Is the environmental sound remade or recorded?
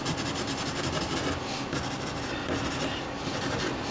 recorded